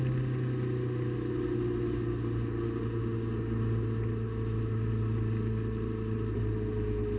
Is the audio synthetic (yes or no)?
no